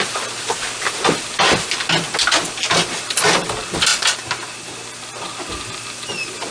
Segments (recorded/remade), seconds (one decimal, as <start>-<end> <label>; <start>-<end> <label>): 0.0-6.5 recorded